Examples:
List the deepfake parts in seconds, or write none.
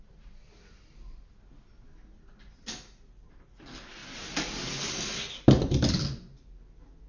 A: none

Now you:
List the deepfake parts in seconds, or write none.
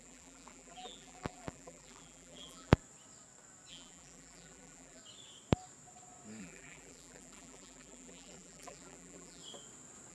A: 0.0-2.8 (vocoder, BigVGAN v2); 3.7-5.0; 6.4-9.4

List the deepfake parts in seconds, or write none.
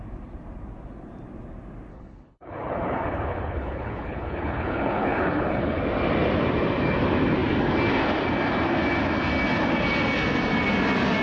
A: 1.9-5.8 (codec, HILCodec)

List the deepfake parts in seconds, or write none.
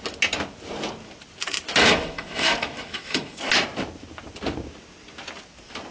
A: 1.8-3.4 (autoencoder, DAC-VAE)